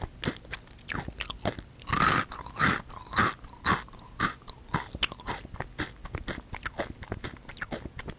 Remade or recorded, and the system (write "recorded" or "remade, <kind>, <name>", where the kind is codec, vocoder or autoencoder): recorded